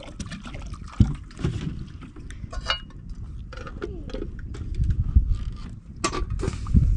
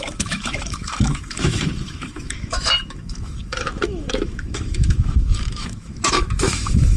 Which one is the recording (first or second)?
first